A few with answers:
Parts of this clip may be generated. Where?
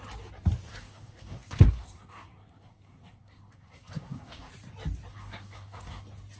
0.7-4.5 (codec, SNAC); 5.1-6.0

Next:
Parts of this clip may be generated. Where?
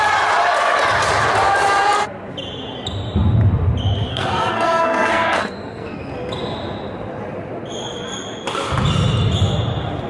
4.1-6.0 (codec, SNAC)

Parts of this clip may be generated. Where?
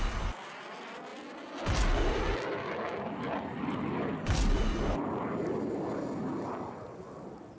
none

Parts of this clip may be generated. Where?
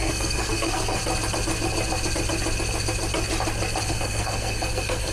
0.0-1.0 (codec, SNAC); 3.8-5.1